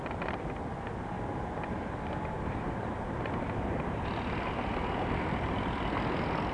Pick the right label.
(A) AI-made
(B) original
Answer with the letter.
B